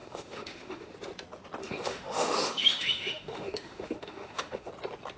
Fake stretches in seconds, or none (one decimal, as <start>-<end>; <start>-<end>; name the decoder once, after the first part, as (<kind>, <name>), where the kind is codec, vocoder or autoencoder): 0.0-0.9 (autoencoder, DAC-VAE); 1.6-4.7